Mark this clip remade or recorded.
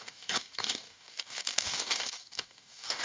remade